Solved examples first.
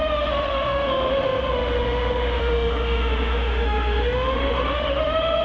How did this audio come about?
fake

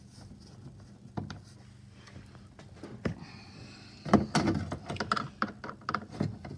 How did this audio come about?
real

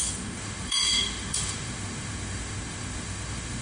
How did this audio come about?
fake